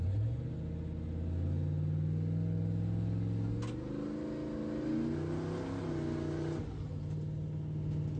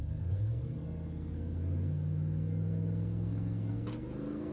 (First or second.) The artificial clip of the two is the second